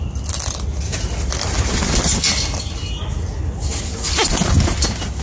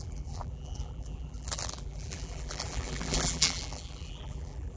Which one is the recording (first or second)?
first